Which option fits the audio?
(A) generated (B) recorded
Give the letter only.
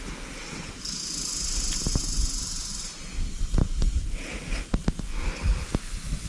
B